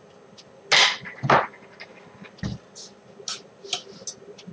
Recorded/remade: recorded